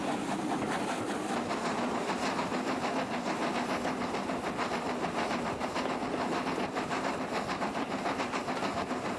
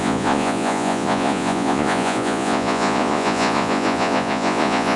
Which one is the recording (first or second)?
first